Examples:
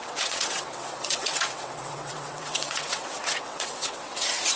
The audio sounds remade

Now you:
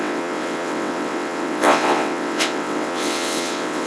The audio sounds remade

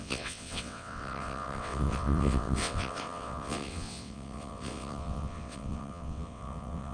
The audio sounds remade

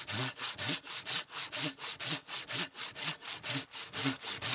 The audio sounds recorded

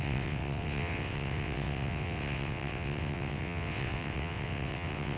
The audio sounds remade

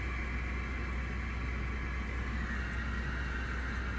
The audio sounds recorded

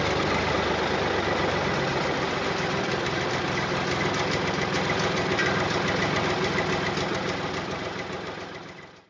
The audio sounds recorded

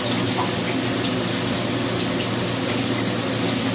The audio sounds recorded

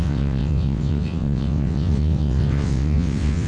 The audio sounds remade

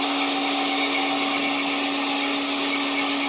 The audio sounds recorded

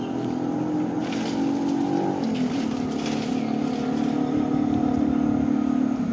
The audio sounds recorded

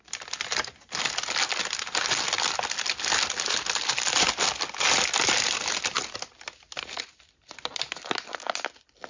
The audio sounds recorded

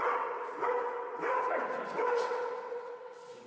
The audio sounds remade